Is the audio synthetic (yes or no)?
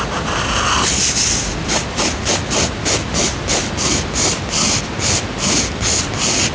no